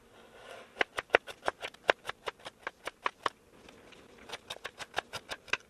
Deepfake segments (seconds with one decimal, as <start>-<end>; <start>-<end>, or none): none